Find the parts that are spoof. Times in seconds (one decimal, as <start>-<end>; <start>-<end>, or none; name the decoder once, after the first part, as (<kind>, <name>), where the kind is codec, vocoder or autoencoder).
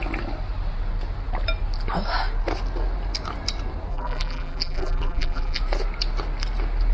3.9-5.6 (vocoder, BigVGAN v2)